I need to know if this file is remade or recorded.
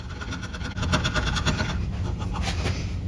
recorded